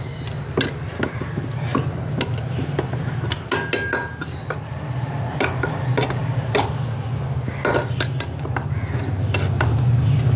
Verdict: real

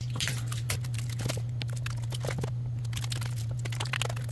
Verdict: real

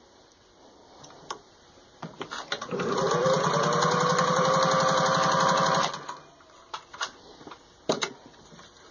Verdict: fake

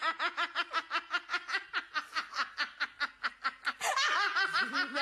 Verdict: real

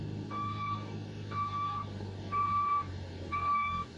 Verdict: fake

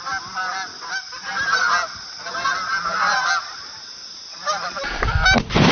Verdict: real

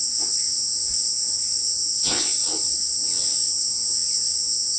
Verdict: fake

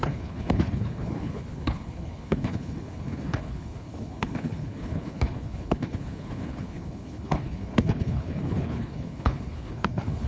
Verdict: fake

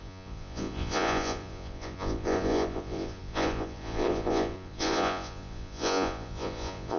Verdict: fake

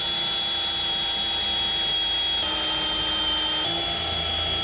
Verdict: real